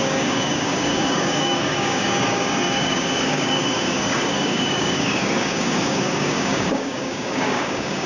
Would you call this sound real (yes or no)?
no